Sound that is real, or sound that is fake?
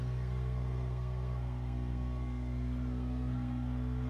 fake